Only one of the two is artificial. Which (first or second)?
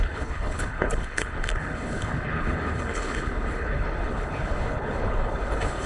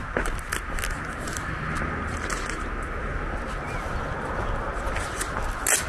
first